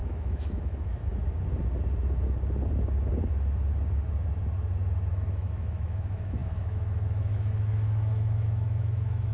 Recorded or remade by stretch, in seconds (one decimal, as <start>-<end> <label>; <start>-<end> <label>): 0.0-1.1 remade; 1.1-5.1 recorded; 5.1-9.3 remade